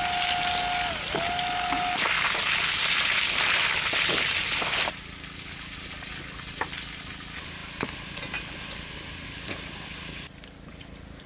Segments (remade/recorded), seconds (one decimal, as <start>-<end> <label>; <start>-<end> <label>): 0.0-11.3 recorded